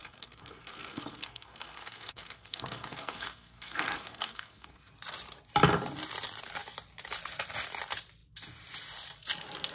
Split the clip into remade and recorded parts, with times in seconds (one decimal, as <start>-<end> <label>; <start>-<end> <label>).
0.0-4.9 remade; 4.9-9.7 recorded